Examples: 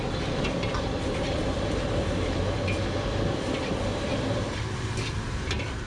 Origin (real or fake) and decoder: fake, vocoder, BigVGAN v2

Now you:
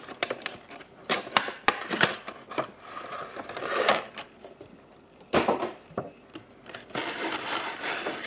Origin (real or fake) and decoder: fake, vocoder, BigVGAN v2